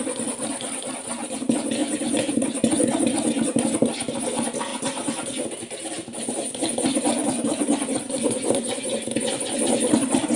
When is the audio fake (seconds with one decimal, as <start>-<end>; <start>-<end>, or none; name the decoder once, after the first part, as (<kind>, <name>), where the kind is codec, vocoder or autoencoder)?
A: 1.8-2.3 (vocoder, Vocos)